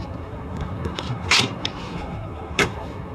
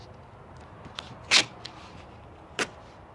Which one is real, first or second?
second